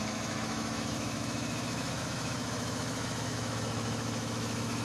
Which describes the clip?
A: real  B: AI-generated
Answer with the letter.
B